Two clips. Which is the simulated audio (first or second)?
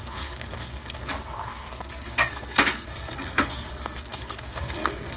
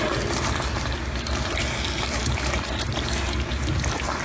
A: first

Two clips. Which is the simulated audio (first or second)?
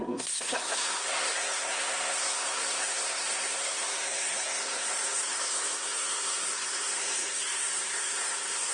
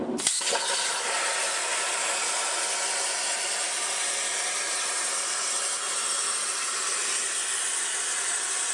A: first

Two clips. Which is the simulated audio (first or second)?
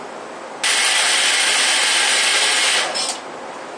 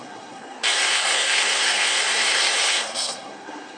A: second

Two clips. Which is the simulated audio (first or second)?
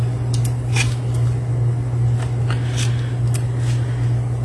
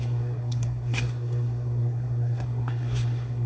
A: second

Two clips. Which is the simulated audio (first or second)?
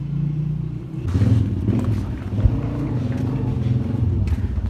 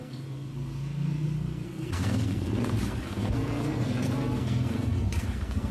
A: second